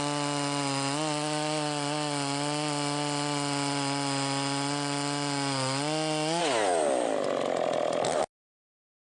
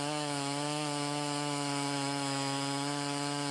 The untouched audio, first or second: first